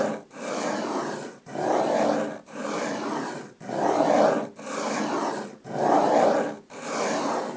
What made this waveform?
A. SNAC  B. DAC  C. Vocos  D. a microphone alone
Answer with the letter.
D